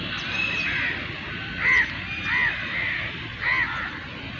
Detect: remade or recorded recorded